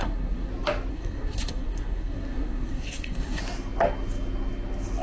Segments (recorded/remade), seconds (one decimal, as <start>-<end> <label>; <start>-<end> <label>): 0.0-0.5 remade; 0.5-0.9 recorded; 0.9-3.4 remade; 3.4-5.0 recorded